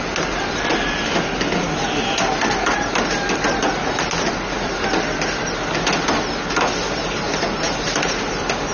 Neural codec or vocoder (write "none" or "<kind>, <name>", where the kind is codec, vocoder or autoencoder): none